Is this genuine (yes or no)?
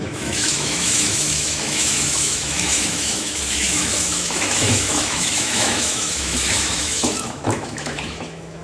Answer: no